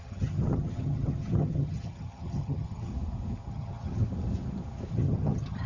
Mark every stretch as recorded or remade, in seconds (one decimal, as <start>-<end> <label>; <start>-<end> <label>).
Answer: 0.0-2.9 remade; 2.9-3.5 recorded; 3.5-4.0 remade; 4.0-4.9 recorded; 4.9-5.7 remade